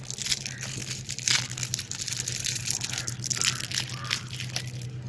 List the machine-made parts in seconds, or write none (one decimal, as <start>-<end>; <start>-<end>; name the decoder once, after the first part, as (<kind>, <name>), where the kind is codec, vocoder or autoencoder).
none